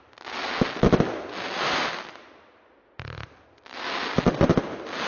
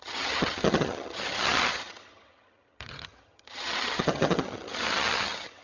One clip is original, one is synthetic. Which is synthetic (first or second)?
second